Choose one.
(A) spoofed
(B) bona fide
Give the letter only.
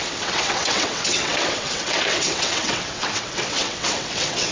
A